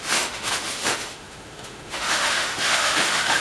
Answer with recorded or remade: remade